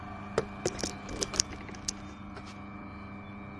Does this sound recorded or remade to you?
recorded